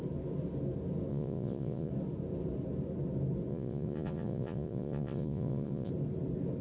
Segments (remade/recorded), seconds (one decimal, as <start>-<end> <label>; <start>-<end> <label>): 0.0-1.1 recorded; 1.1-1.9 remade; 1.9-3.5 recorded; 3.5-5.9 remade; 5.9-6.6 recorded